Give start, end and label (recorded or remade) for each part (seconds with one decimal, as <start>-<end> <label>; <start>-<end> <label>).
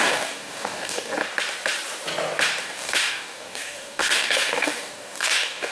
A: 0.0-1.1 remade; 1.1-2.6 recorded; 2.6-5.7 remade